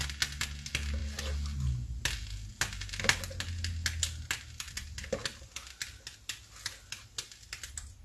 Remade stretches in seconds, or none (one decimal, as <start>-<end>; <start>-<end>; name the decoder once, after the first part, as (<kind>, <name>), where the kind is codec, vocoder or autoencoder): none